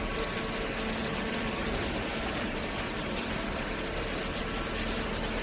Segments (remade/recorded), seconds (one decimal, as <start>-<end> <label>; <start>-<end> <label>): 0.0-1.0 recorded; 1.0-4.2 remade; 4.2-5.4 recorded